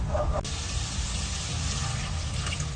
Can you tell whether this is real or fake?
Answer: real